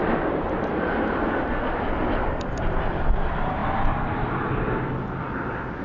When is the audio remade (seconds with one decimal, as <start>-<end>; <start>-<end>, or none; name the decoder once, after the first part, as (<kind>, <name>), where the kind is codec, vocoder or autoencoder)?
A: none